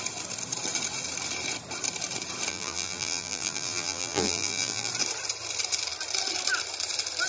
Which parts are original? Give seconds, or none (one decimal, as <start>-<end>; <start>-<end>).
0.0-2.5; 4.9-7.3